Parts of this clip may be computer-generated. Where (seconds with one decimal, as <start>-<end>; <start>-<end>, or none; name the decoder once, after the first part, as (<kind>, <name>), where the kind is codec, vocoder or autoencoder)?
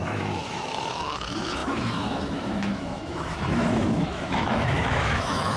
0.0-5.6 (autoencoder, DAC-VAE)